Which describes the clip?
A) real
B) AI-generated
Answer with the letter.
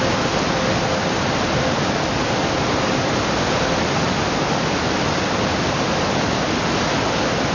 A